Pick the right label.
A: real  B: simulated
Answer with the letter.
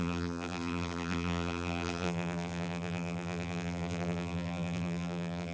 B